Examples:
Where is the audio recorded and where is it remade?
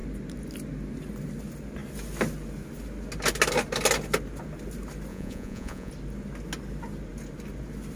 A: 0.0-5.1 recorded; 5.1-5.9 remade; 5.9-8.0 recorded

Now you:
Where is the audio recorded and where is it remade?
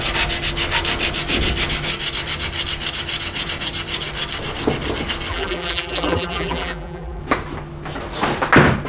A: 0.0-5.3 recorded; 5.3-7.2 remade; 7.2-8.9 recorded